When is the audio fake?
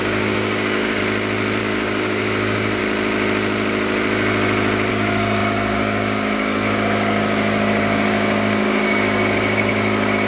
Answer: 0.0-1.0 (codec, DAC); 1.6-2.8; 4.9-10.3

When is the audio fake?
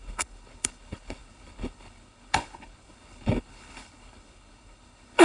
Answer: 0.0-5.2 (codec, HILCodec)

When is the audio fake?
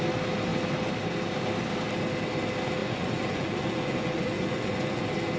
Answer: 2.8-5.0 (vocoder, Vocos)